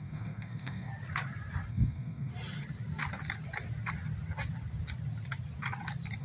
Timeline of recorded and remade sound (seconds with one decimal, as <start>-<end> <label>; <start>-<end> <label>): 0.0-0.9 remade; 0.9-1.7 recorded; 1.7-2.3 remade; 2.3-6.2 recorded